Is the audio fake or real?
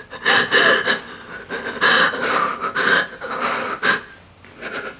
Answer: real